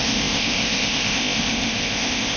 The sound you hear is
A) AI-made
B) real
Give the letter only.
A